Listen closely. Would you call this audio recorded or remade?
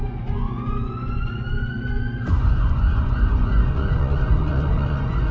remade